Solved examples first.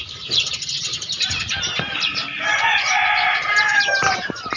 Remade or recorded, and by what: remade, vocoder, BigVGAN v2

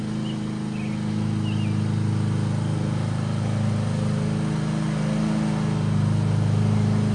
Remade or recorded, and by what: recorded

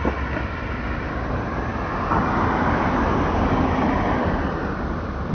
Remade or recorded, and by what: recorded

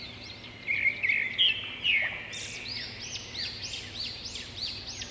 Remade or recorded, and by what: recorded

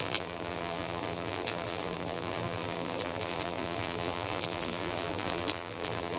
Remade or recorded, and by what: remade, vocoder, BigVGAN v2